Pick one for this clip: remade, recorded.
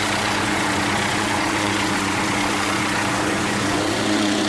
remade